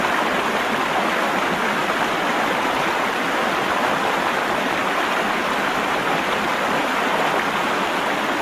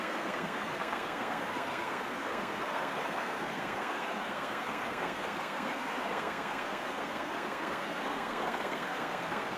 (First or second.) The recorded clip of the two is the first